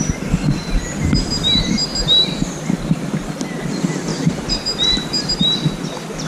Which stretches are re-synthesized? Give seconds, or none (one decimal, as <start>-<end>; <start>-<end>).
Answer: 4.1-5.3